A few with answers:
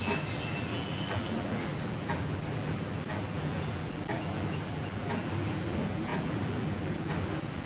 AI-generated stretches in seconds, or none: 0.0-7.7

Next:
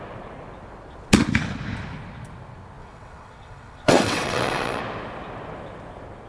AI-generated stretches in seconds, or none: 2.8-4.8

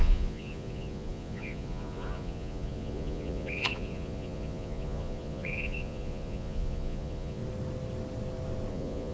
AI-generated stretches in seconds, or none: 0.0-7.4; 8.7-9.1

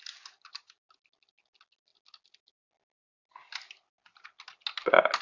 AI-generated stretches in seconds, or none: none

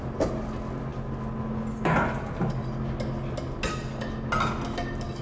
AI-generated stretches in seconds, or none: none

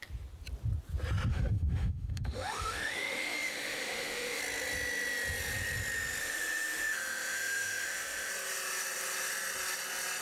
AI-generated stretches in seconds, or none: 1.3-4.4; 6.2-8.3

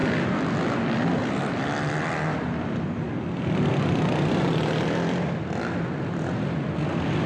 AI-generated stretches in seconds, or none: none

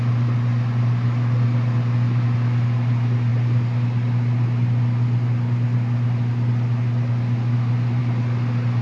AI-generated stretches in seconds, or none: none